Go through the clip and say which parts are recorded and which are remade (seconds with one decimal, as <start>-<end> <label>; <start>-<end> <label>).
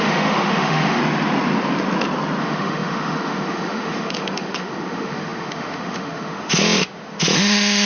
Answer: 0.0-1.0 remade; 1.0-2.4 recorded; 2.4-7.9 remade